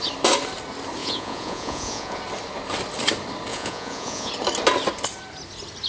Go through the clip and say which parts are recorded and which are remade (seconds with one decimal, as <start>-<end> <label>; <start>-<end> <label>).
0.0-1.0 recorded; 1.0-2.2 remade; 2.2-3.5 recorded; 3.5-4.3 remade; 4.3-5.9 recorded